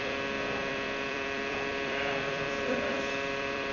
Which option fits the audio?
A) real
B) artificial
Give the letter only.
B